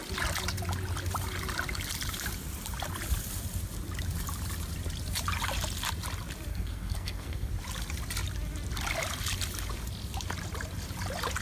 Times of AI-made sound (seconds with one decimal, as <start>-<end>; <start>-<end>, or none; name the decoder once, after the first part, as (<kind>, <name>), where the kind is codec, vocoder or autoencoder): 6.5-7.5 (codec, SNAC)